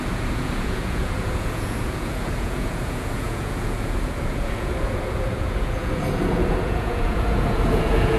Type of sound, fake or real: fake